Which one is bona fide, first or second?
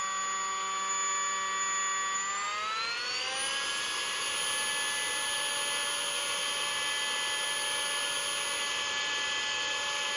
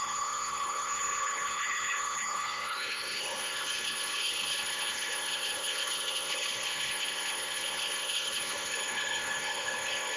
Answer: first